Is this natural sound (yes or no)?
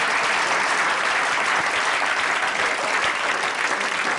yes